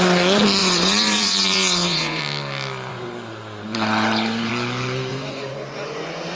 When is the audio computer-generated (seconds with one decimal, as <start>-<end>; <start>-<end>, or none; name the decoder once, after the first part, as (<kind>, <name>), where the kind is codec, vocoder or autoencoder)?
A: 0.6-2.2 (vocoder, Vocos); 2.9-4.5; 5.1-6.3